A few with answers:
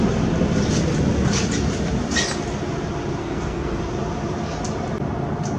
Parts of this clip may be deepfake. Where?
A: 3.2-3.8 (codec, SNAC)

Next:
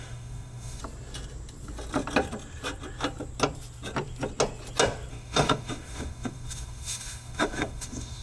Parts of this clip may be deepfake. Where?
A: 0.0-0.8 (autoencoder, DAC-VAE); 5.1-8.2

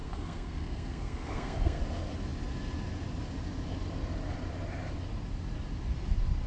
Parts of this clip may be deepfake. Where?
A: 0.0-1.8 (codec, SNAC)

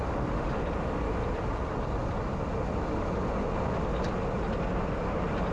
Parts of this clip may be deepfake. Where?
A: 0.0-2.0 (vocoder, BigVGAN v2); 4.8-5.5

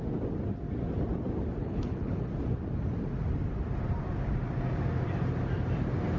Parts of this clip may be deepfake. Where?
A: 1.6-2.3 (codec, HILCodec)

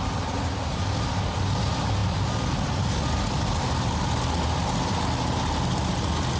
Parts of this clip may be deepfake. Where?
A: none